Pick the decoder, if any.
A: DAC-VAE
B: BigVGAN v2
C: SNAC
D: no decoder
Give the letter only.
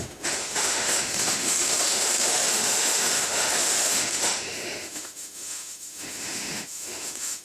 A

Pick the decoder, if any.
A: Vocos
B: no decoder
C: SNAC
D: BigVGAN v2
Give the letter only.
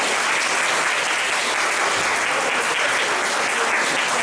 B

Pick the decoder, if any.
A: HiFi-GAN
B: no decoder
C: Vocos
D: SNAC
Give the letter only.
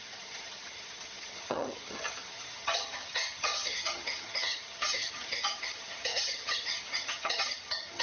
A